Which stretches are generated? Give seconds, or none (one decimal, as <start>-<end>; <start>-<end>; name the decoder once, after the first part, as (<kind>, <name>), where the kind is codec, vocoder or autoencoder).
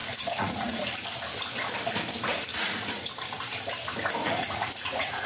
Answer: 0.0-0.8 (vocoder, Vocos); 2.5-3.1; 4.2-5.3